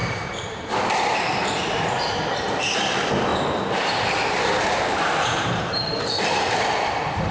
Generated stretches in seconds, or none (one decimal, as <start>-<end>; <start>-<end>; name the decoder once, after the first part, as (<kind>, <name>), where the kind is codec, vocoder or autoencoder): 0.0-1.8 (vocoder, BigVGAN v2); 3.3-6.6